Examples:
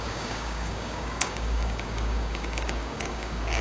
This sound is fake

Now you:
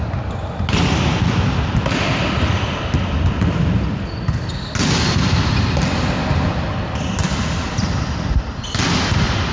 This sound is real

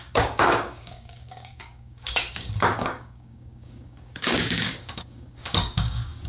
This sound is fake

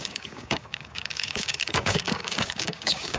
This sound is fake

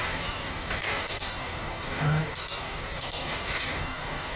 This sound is fake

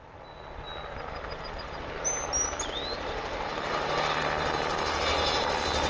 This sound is real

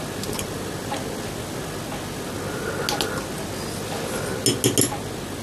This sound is real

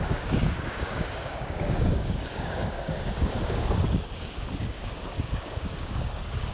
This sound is fake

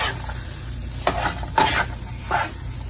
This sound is real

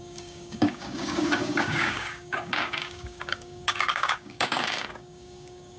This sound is fake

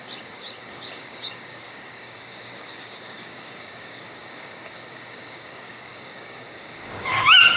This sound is fake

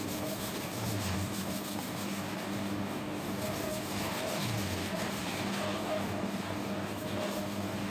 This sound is fake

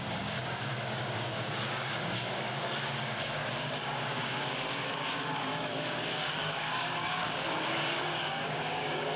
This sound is fake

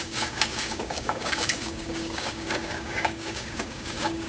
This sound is fake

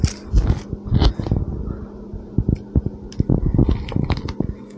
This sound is real